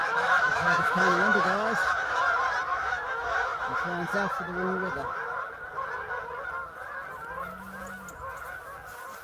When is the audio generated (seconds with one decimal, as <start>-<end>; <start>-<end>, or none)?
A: 0.0-2.2; 2.7-4.1